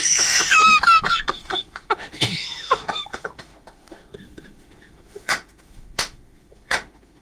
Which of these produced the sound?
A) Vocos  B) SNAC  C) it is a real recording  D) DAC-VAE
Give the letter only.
D